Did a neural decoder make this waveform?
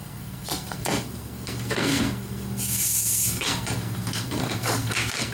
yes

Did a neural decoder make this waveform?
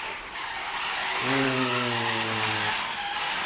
no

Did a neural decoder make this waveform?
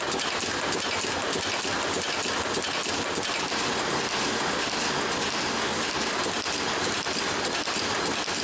no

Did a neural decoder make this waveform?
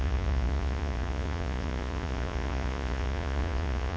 yes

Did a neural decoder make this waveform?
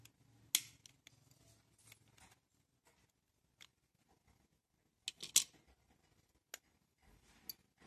no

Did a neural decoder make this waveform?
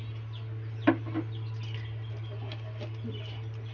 no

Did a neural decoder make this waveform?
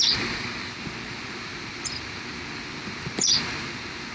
yes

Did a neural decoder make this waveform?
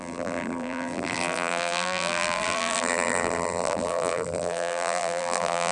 yes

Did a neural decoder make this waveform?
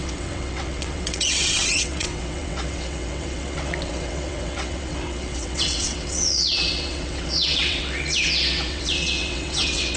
yes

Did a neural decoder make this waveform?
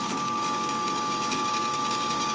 yes